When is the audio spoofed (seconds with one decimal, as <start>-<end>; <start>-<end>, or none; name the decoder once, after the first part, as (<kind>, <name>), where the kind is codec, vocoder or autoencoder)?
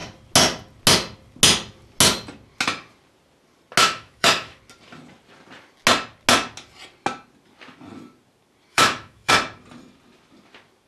3.8-4.6 (autoencoder, DAC-VAE); 8.7-9.3